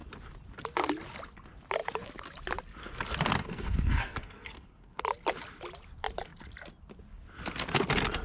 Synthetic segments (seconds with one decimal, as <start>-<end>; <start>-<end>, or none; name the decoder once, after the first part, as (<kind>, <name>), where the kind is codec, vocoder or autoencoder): 3.4-5.0 (codec, SNAC)